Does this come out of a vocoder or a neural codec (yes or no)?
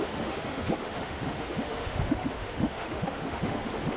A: yes